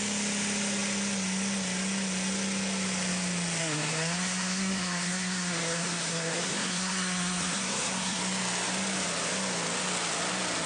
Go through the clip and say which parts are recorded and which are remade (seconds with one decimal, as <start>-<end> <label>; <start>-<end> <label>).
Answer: 0.0-3.6 recorded; 3.6-8.2 remade; 8.2-10.7 recorded